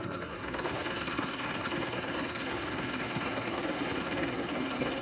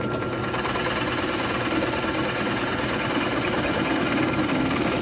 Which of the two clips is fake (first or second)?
first